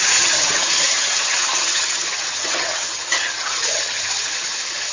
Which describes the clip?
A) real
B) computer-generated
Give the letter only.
B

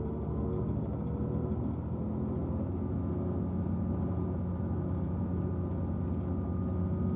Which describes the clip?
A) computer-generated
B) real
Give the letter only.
B